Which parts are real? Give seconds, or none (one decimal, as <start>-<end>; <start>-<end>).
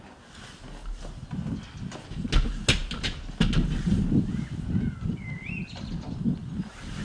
0.0-7.0